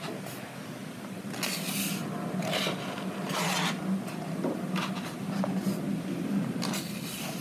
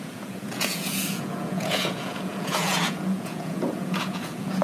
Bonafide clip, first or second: first